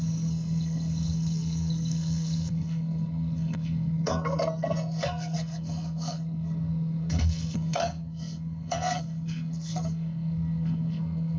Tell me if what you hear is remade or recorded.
remade